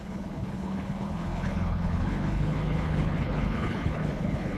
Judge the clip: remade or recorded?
remade